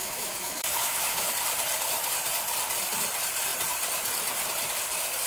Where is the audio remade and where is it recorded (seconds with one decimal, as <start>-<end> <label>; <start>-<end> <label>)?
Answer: 0.0-1.3 remade; 1.3-5.3 recorded